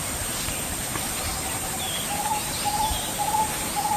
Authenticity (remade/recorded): remade